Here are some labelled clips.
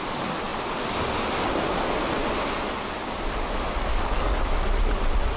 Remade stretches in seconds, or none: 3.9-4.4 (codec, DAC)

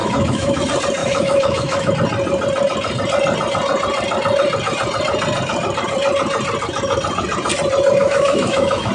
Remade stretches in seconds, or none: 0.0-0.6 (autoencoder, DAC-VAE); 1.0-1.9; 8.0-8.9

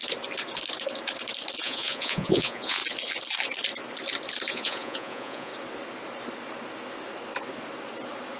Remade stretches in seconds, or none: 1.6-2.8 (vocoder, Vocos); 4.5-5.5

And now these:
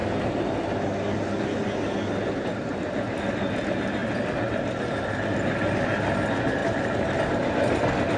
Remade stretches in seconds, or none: 6.6-7.2 (vocoder, BigVGAN v2)